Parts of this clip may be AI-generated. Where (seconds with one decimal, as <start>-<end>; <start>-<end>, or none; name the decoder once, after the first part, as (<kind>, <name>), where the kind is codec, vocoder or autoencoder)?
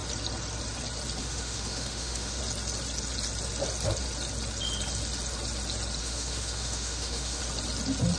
1.2-2.4 (autoencoder, DAC-VAE); 6.0-7.4